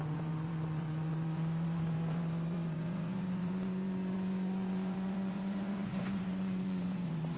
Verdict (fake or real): fake